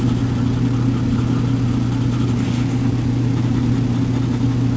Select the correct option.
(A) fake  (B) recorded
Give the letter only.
B